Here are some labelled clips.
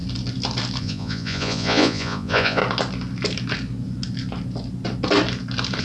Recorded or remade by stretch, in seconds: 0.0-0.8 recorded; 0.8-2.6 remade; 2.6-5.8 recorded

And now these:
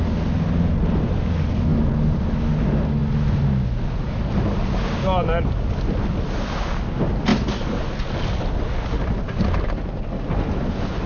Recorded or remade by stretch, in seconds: 0.0-11.1 recorded

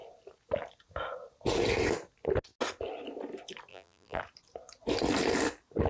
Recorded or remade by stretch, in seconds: 0.0-3.7 recorded; 3.7-4.2 remade; 4.2-5.9 recorded

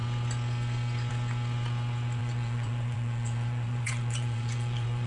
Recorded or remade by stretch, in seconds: 0.0-2.2 recorded; 2.2-5.1 remade

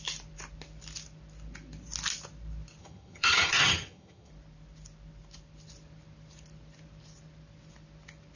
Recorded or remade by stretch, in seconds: 0.0-2.8 recorded; 2.8-4.3 remade; 4.3-8.4 recorded

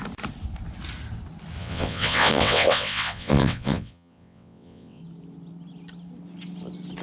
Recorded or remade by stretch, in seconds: 0.0-1.6 recorded; 1.6-5.0 remade; 5.0-7.0 recorded

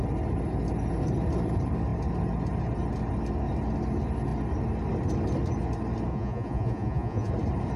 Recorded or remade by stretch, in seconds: 0.0-6.1 recorded; 6.1-7.3 remade; 7.3-7.8 recorded

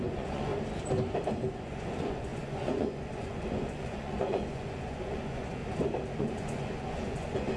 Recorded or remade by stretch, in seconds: 0.0-0.5 remade; 0.5-1.6 recorded; 1.6-5.6 remade; 5.6-6.2 recorded; 6.2-7.6 remade